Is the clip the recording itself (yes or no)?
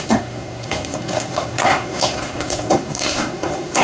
no